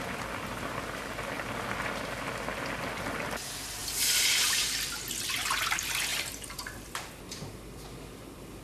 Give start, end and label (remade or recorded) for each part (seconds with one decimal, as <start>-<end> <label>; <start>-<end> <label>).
0.0-6.1 recorded; 6.1-7.1 remade; 7.1-8.6 recorded